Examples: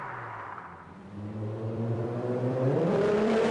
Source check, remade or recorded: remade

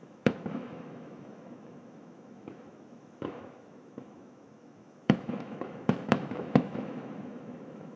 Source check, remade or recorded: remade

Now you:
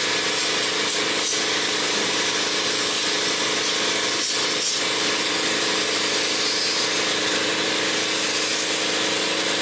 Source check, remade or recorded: recorded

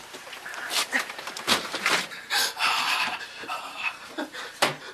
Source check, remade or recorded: remade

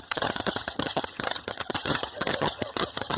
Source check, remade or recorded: remade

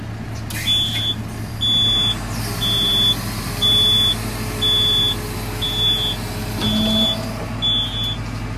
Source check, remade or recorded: recorded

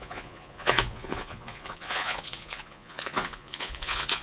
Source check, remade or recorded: remade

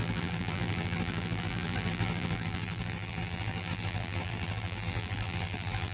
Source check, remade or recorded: remade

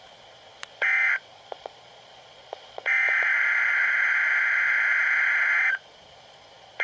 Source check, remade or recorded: remade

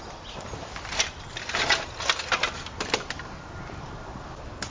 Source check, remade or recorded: recorded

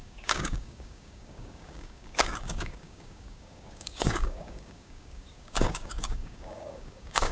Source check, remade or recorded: remade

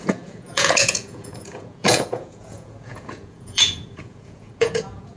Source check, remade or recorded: remade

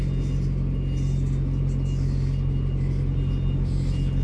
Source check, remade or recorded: recorded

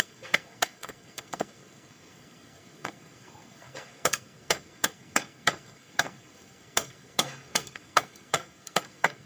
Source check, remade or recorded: remade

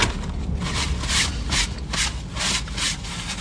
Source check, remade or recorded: recorded